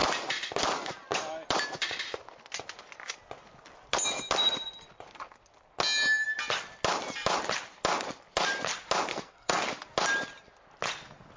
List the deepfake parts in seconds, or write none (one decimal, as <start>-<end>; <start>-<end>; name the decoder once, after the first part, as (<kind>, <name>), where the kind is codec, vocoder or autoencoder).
9.1-9.7 (codec, SNAC)

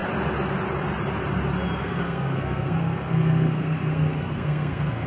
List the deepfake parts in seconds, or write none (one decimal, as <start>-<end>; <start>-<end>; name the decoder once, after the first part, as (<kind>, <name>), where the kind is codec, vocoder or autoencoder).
1.8-5.1 (codec, SNAC)

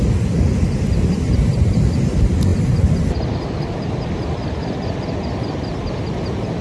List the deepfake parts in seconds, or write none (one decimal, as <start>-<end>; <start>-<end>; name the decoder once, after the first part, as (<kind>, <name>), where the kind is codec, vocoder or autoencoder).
none

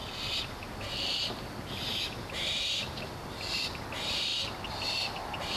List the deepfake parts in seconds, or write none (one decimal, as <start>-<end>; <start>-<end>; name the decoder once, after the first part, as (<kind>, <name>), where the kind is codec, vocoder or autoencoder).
none

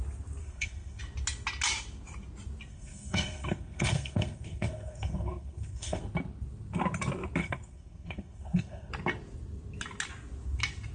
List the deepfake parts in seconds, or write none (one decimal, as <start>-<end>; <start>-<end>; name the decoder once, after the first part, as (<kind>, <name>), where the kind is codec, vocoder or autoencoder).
0.4-1.0 (codec, SNAC); 2.7-6.0; 7.4-8.9

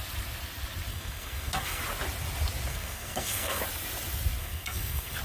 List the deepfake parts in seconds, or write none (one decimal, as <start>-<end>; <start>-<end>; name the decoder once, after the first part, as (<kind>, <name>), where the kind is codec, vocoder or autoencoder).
0.9-1.8 (codec, SNAC); 2.7-3.6; 4.4-5.2

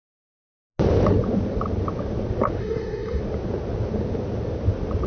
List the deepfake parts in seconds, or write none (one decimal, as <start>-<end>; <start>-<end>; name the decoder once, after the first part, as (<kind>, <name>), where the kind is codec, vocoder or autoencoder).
2.6-3.2 (codec, SNAC)

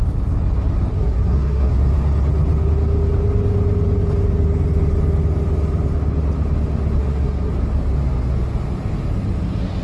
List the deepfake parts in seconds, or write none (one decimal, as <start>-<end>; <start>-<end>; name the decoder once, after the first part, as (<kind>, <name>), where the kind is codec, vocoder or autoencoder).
0.9-1.7 (codec, SNAC); 7.0-7.5